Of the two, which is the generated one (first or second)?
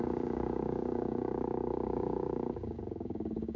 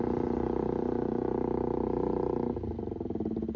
first